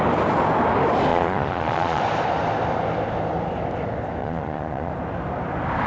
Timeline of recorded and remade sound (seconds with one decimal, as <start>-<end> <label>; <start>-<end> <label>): 0.0-1.1 recorded; 1.1-2.0 remade; 2.0-4.2 recorded; 4.2-4.9 remade; 4.9-5.9 recorded

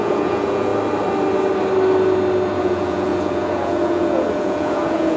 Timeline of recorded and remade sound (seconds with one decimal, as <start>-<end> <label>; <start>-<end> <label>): 0.0-0.7 remade; 0.7-2.6 recorded; 2.6-5.2 remade

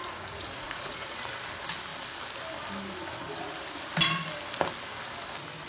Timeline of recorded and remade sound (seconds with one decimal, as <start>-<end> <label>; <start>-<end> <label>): 0.0-1.2 remade; 1.2-5.7 recorded

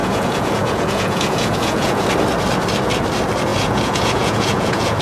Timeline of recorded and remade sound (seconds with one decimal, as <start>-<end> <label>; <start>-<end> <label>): 0.0-2.1 remade; 2.1-3.5 recorded; 3.5-5.0 remade

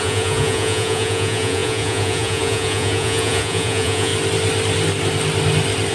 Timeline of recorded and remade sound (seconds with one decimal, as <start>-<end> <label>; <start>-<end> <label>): 0.0-4.1 remade; 4.1-5.9 recorded

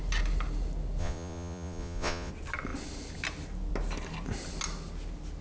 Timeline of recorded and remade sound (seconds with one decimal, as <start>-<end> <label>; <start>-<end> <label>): 0.0-1.0 recorded; 1.0-2.3 remade; 2.3-5.4 recorded

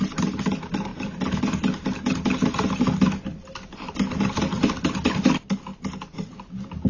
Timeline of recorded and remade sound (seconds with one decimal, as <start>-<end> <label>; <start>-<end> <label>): 0.0-6.9 recorded

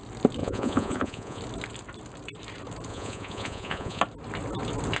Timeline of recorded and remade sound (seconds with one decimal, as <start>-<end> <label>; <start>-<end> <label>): 0.0-0.4 recorded; 0.4-1.4 remade; 1.4-2.9 recorded; 2.9-4.0 remade; 4.0-5.0 recorded